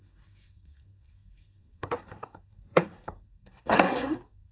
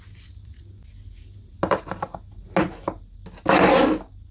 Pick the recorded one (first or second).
second